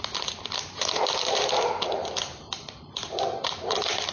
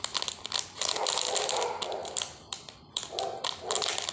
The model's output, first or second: first